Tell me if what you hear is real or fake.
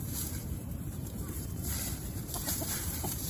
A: fake